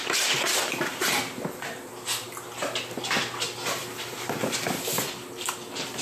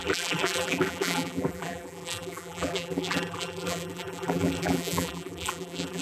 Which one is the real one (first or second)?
first